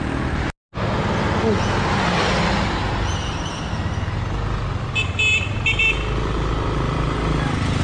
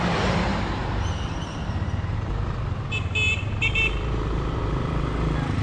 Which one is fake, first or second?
second